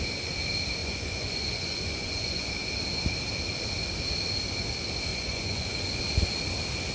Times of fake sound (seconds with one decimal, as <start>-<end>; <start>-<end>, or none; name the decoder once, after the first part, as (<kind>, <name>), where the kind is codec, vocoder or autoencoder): 0.8-2.5 (vocoder, Vocos); 5.1-6.0